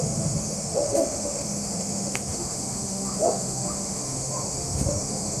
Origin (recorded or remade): remade